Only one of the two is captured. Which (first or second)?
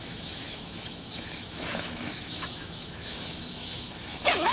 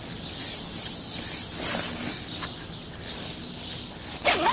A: second